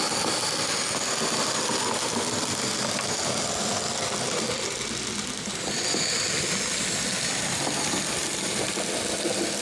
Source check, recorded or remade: recorded